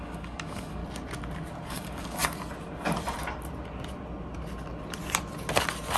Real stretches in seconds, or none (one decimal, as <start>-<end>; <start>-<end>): 0.8-1.7; 2.2-6.0